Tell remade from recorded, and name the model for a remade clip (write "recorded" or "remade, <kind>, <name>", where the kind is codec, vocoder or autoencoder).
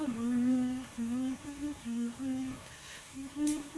remade, codec, SNAC